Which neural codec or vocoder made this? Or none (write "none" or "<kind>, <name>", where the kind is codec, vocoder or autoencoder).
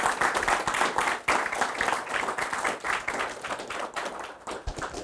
none